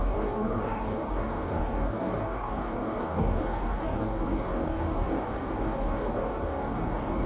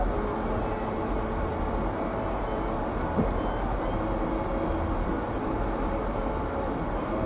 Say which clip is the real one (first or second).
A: second